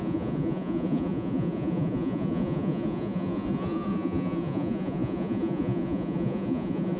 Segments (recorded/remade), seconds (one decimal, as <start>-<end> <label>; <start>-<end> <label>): 0.0-7.0 remade